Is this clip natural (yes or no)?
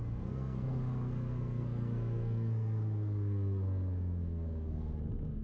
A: no